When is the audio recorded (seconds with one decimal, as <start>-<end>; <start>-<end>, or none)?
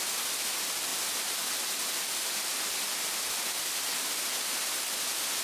0.0-5.4